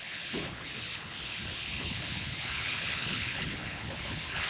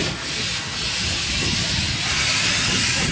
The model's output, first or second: first